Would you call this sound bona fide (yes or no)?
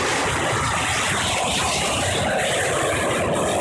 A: yes